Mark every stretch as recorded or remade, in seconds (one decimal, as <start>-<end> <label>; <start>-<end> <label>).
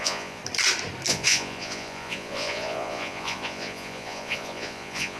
0.0-0.4 remade; 0.4-1.1 recorded; 1.1-5.2 remade